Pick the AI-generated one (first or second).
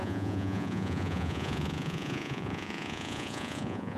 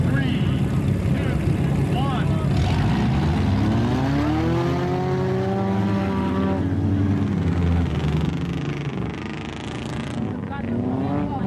first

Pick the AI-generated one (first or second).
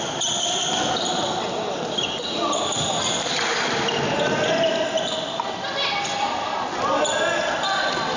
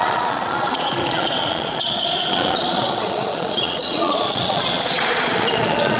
second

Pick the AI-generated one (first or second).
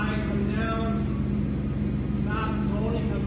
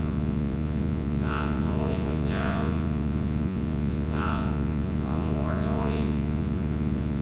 second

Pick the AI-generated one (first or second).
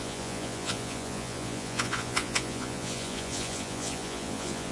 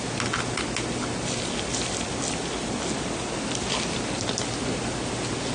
first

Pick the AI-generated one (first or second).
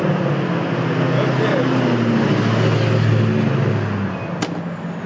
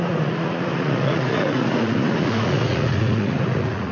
second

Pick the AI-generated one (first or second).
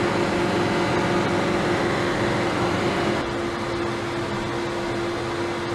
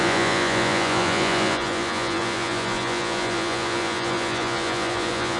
second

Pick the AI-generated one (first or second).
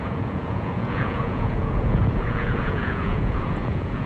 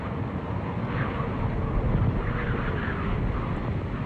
first